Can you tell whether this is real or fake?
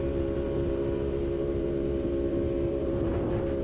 fake